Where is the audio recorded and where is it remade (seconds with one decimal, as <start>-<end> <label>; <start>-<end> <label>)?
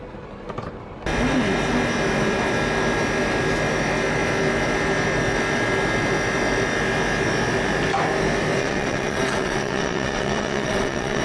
0.0-8.6 recorded; 8.6-11.2 remade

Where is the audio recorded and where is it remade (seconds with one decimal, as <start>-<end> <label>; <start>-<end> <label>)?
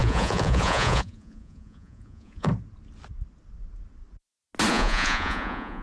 0.0-2.5 remade; 2.5-4.7 recorded; 4.7-5.8 remade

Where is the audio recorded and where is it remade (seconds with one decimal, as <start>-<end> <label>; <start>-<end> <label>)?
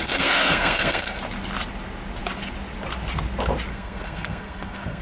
0.0-1.2 remade; 1.2-3.7 recorded; 3.7-5.0 remade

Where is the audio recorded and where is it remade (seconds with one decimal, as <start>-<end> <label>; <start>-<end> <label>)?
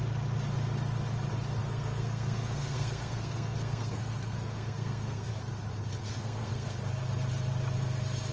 0.0-1.6 recorded; 1.6-5.3 remade; 5.3-6.0 recorded; 6.0-6.8 remade; 6.8-8.3 recorded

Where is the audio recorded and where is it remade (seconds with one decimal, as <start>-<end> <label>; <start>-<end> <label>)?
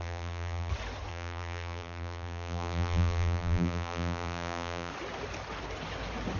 0.0-0.7 remade; 0.7-1.1 recorded; 1.1-4.9 remade; 4.9-6.4 recorded